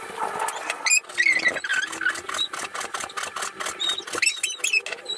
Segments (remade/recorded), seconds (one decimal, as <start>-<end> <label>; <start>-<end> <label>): 0.0-5.2 recorded